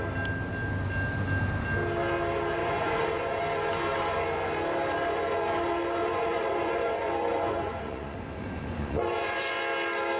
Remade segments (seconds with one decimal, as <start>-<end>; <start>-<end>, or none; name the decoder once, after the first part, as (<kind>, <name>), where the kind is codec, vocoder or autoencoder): 2.6-3.4 (vocoder, Vocos); 6.0-9.6